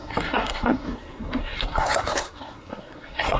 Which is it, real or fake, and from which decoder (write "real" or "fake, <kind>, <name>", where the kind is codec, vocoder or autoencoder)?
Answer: fake, codec, SNAC